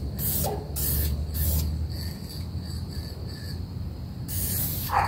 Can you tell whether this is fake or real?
real